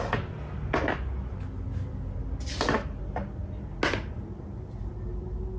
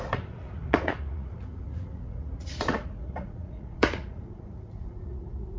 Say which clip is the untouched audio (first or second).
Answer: first